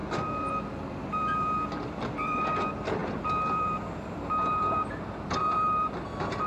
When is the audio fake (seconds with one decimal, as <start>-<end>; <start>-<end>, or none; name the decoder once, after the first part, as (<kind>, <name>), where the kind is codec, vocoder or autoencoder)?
0.0-6.5 (vocoder, BigVGAN v2)